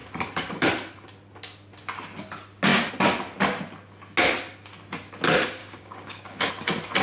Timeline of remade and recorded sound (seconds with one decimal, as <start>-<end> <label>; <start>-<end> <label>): 0.0-5.6 recorded; 5.6-6.5 remade; 6.5-7.0 recorded